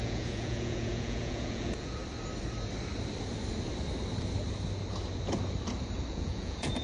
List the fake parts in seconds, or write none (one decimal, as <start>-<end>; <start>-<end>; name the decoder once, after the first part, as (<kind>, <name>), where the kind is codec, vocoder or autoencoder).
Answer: 0.0-2.0 (vocoder, Vocos); 6.1-6.8